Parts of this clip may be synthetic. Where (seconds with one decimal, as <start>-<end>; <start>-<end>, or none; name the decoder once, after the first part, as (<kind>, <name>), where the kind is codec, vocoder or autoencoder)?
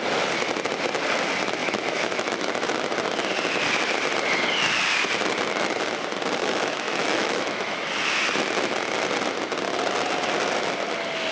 1.6-2.5 (autoencoder, DAC-VAE); 6.4-7.9